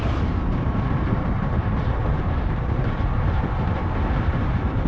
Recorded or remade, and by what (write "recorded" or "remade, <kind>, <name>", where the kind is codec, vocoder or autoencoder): remade, vocoder, BigVGAN v2